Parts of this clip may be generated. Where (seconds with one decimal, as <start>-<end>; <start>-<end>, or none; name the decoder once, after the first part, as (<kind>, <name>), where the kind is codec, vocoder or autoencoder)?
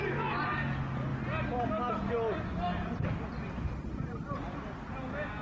none